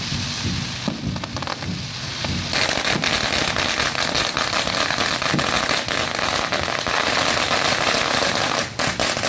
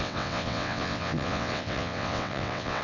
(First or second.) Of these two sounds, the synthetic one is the second